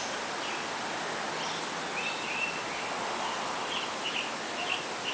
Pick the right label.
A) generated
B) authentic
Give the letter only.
B